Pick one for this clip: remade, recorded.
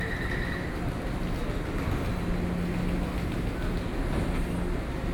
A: recorded